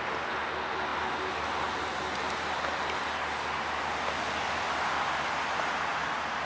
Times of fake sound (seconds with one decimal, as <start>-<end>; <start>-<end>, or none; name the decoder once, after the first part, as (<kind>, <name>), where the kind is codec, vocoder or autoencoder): none